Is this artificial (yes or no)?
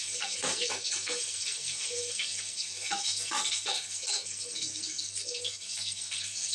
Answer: yes